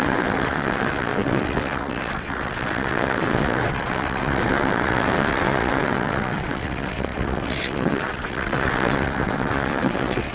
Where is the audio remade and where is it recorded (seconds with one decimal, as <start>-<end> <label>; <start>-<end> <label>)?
0.0-10.3 remade